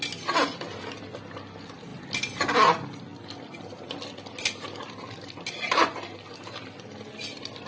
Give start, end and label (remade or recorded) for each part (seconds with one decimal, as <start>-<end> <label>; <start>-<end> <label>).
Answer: 0.0-7.7 recorded